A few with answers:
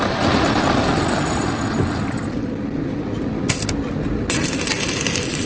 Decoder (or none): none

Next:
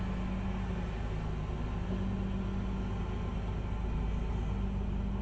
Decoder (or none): none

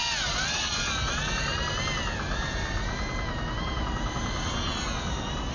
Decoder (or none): none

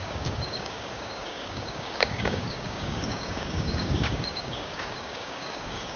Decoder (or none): codec, DAC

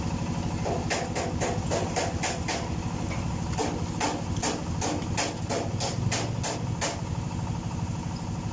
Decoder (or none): none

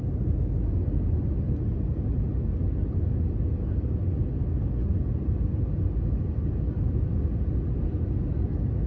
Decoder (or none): none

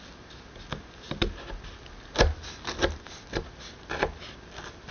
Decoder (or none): none